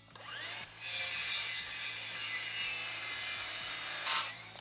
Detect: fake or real fake